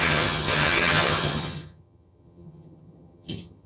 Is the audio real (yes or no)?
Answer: no